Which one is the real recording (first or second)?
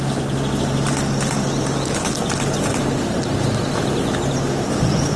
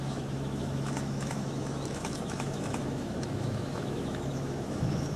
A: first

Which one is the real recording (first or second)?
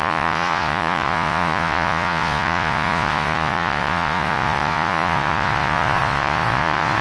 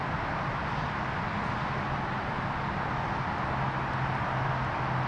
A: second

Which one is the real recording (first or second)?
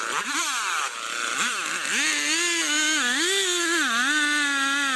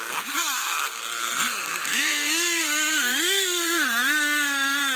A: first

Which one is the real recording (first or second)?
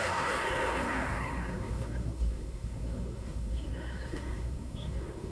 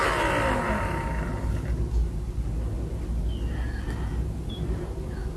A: second